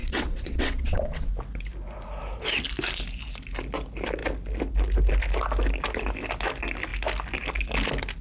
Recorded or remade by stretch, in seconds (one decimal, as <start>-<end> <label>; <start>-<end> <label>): 0.0-1.3 remade; 1.3-8.2 recorded